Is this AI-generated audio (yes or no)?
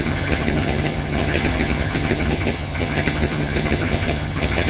yes